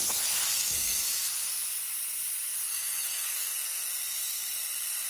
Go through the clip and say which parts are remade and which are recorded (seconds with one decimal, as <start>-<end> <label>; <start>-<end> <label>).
0.0-0.6 recorded; 0.6-1.1 remade; 1.1-2.7 recorded; 2.7-3.9 remade; 3.9-5.1 recorded